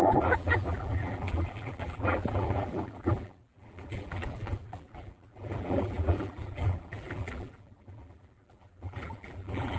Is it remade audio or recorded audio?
remade